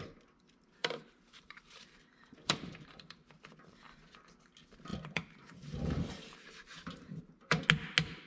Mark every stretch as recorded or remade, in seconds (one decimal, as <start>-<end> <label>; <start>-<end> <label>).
0.0-0.8 recorded; 0.8-3.3 remade; 3.3-4.9 recorded; 4.9-7.6 remade; 7.6-8.3 recorded